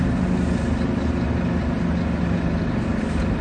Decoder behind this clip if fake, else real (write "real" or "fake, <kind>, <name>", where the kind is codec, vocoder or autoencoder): real